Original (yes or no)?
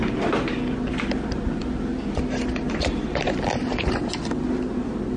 yes